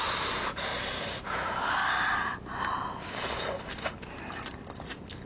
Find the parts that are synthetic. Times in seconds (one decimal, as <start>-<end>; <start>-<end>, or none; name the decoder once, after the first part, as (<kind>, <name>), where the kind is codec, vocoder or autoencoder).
0.0-0.7 (vocoder, BigVGAN v2); 1.2-1.8